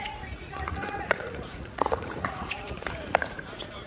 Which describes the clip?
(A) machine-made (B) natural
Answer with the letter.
A